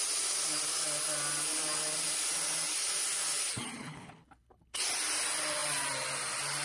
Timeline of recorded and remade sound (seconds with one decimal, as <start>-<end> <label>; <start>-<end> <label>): 0.0-3.8 recorded; 3.8-4.8 remade; 4.8-6.6 recorded